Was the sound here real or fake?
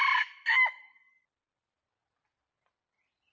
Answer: real